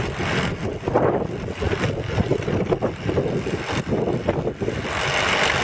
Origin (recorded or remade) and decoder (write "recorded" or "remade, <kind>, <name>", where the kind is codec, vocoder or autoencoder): recorded